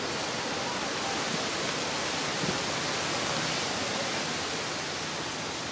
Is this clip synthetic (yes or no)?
no